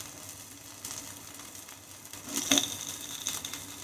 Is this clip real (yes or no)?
yes